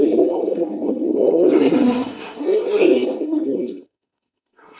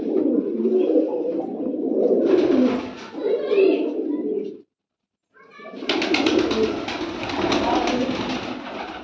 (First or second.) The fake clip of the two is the first